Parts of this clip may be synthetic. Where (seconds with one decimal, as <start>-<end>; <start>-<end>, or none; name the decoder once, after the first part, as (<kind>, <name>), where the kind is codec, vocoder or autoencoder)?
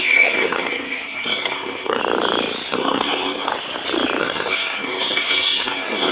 0.0-2.0 (codec, SNAC); 2.7-3.5; 4.2-6.1